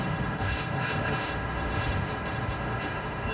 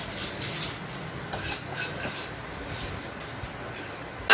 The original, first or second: second